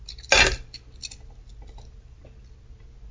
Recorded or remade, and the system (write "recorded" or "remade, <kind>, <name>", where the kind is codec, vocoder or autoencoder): recorded